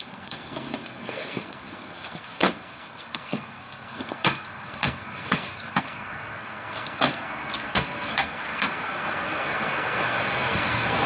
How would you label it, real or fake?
fake